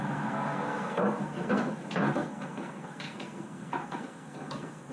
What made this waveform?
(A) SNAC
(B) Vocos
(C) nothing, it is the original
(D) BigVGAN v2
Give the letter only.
A